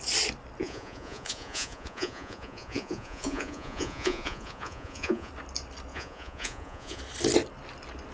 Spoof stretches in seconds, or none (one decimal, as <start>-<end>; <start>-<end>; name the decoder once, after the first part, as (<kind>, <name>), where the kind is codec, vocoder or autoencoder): 0.6-5.3 (vocoder, Vocos); 5.9-7.0